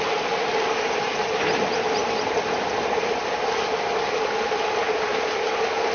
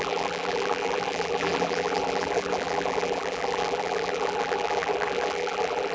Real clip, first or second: first